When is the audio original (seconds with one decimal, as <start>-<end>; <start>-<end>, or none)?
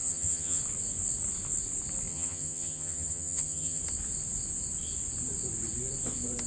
0.6-2.1; 3.8-6.5